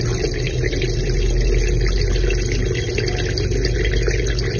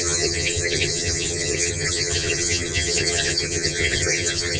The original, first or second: first